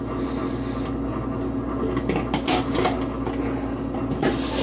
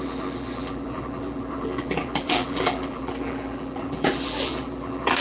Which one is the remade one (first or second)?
second